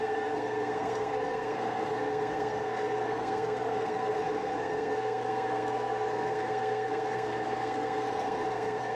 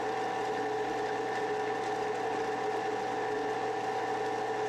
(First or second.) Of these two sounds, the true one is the second